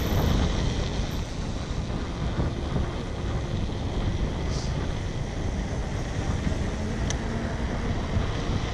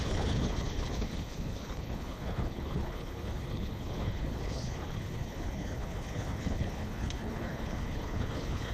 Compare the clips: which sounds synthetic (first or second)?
second